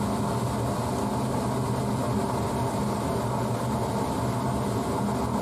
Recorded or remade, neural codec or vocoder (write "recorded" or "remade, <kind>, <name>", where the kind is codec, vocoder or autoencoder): recorded